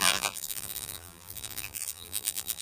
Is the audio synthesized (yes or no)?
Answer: yes